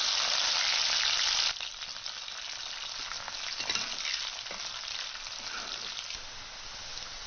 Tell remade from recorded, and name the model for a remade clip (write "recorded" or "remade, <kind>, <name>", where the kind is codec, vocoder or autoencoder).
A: recorded